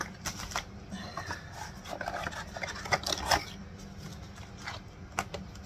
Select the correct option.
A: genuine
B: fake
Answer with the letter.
A